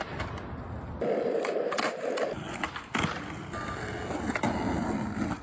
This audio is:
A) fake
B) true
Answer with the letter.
B